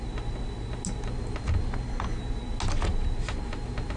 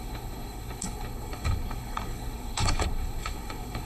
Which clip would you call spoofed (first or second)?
second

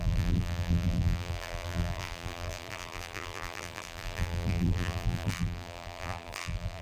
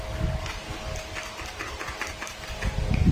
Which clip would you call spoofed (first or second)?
first